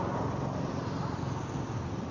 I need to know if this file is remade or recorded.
recorded